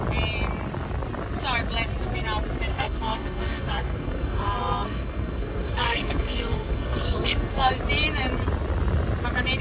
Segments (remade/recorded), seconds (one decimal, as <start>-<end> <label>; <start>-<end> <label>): 0.0-2.7 recorded; 2.7-7.7 remade; 7.7-9.6 recorded